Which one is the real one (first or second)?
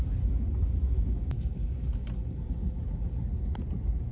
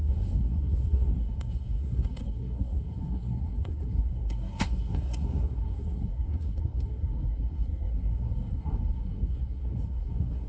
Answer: first